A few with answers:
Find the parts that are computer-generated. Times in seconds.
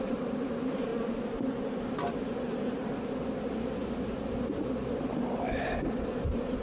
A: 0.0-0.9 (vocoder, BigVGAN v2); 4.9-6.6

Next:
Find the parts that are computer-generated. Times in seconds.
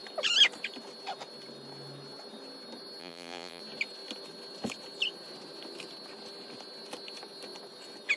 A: 3.0-3.6 (vocoder, BigVGAN v2)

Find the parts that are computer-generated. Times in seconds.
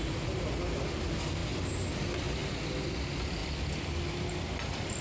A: 1.4-1.9 (vocoder, BigVGAN v2)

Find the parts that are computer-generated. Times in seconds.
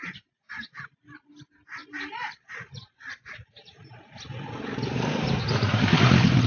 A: 0.0-1.3 (vocoder, BigVGAN v2); 1.8-4.1; 4.9-6.5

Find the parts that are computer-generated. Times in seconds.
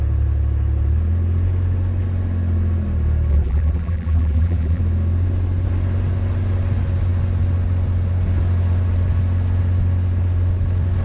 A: 3.3-4.8 (vocoder, BigVGAN v2)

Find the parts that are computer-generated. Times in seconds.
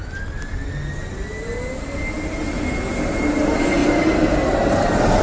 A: 3.8-5.2 (vocoder, BigVGAN v2)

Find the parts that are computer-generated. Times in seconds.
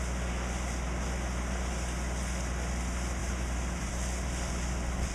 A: 3.2-3.9 (vocoder, BigVGAN v2)